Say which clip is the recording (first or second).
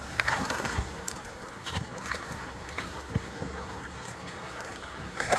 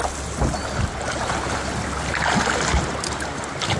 second